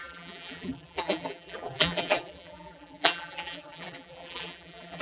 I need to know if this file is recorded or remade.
remade